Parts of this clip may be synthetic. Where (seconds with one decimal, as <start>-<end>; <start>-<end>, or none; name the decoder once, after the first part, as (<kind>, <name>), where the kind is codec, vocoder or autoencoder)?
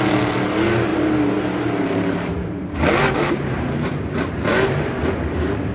0.9-4.3 (vocoder, BigVGAN v2)